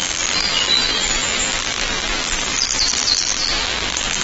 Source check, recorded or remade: remade